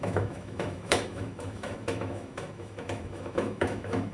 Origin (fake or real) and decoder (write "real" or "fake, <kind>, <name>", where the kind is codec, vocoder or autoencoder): fake, autoencoder, DAC-VAE